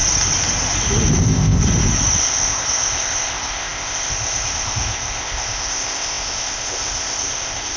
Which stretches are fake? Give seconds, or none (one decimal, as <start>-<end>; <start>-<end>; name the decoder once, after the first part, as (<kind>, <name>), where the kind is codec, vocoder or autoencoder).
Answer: 1.2-1.6 (codec, ZipCodec); 2.2-7.8